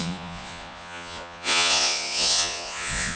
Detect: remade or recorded remade